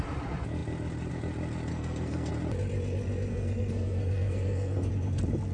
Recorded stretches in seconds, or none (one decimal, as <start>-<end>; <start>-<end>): 0.0-1.7; 2.3-3.3; 4.9-5.5